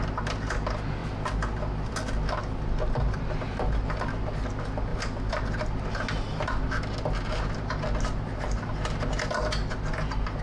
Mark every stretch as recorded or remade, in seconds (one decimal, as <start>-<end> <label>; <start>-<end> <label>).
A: 0.0-10.4 recorded